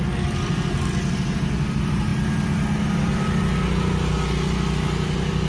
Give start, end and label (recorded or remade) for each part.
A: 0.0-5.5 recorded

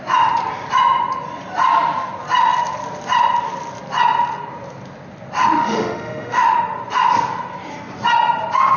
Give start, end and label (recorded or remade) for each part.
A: 0.0-5.4 recorded; 5.4-6.6 remade; 6.6-8.8 recorded

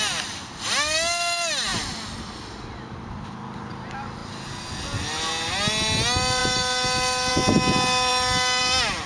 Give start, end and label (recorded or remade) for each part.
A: 0.0-9.1 recorded

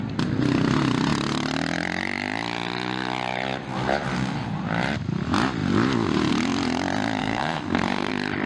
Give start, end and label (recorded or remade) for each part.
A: 0.0-7.2 recorded; 7.2-8.1 remade; 8.1-8.5 recorded

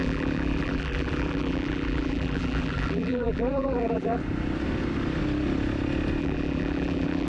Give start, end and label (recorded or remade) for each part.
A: 0.0-4.2 remade; 4.2-6.2 recorded; 6.2-7.3 remade